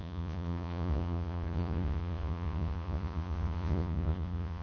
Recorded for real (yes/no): no